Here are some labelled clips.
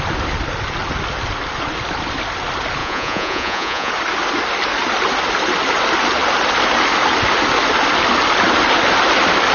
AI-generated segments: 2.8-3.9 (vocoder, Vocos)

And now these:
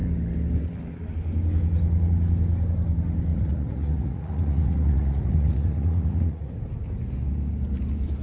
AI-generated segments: 3.3-6.6 (vocoder, Vocos)

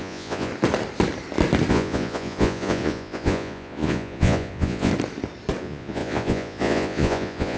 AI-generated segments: 0.0-0.5 (vocoder, Vocos); 1.7-4.9; 5.6-7.6

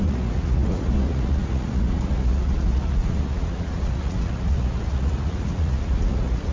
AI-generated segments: 0.0-6.5 (vocoder, Vocos)

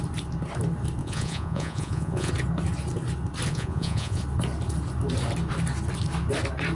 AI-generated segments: 1.0-2.3 (vocoder, Vocos); 3.5-4.2

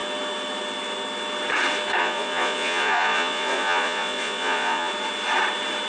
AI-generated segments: 2.0-4.9 (vocoder, Vocos)

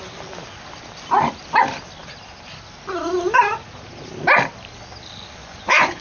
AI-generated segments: 5.4-6.0 (vocoder, Vocos)

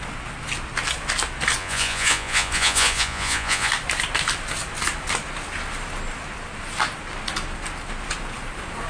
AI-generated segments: 1.6-3.7 (vocoder, Vocos)